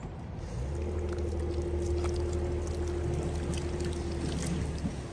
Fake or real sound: real